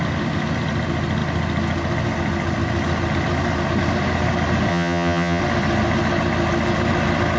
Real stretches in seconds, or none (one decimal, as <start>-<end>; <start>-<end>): 0.0-4.7; 5.4-7.4